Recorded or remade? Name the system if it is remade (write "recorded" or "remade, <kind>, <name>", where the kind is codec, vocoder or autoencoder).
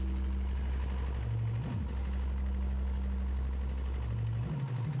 recorded